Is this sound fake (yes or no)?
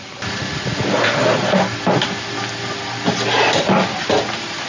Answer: no